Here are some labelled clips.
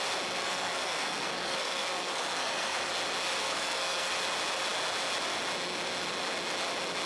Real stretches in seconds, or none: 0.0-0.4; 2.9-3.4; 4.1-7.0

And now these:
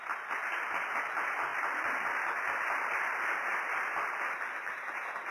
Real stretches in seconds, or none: 0.0-1.5; 4.7-5.3

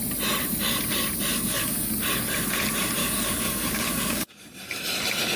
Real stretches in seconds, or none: 0.0-1.3; 1.9-3.0; 4.3-5.4